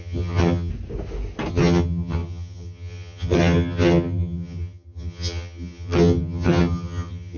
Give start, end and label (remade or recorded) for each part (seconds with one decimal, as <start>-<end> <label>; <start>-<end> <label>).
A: 0.0-0.7 remade; 0.7-1.5 recorded; 1.5-7.4 remade

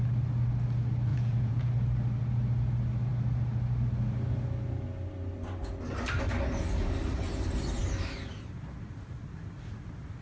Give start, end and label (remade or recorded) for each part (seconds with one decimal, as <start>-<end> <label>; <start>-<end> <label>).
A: 0.0-1.1 recorded; 1.1-1.7 remade; 1.7-10.2 recorded

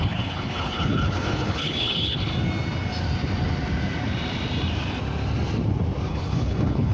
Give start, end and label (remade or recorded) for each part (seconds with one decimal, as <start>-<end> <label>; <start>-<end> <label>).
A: 0.0-2.3 remade; 2.3-6.1 recorded; 6.1-6.9 remade

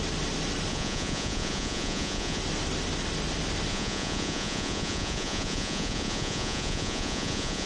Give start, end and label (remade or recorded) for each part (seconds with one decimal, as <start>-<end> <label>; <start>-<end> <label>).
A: 0.0-0.7 recorded; 0.7-2.4 remade; 2.4-3.7 recorded; 3.7-7.7 remade

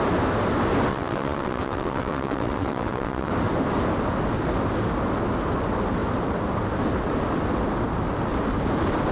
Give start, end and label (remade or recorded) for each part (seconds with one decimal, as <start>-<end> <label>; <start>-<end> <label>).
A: 0.0-0.9 recorded; 0.9-3.3 remade; 3.3-9.1 recorded

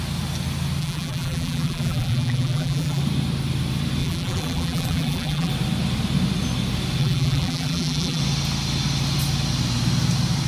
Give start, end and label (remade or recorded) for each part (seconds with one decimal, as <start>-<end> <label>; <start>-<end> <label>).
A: 0.0-0.8 recorded; 0.8-3.0 remade; 3.0-4.0 recorded; 4.0-5.5 remade; 5.5-7.0 recorded; 7.0-8.2 remade; 8.2-10.5 recorded